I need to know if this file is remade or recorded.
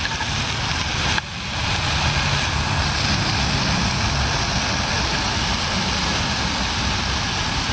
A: recorded